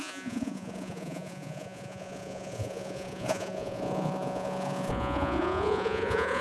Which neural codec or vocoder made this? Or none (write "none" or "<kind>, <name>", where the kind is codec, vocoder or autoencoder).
vocoder, Vocos